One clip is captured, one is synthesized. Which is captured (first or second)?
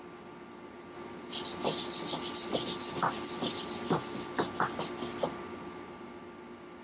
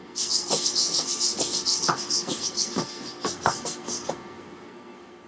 first